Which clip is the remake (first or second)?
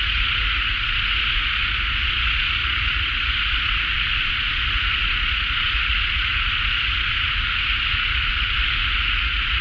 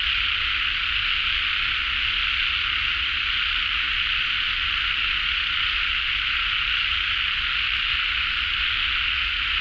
first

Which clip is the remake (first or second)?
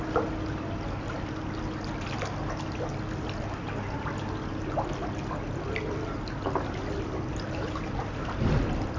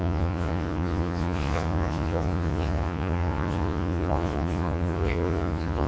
second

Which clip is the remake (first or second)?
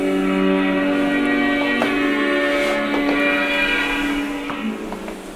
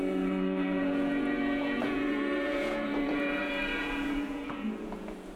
second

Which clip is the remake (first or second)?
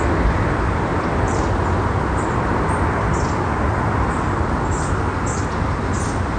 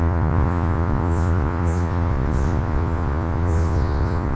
second